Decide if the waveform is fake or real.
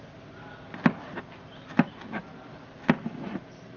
real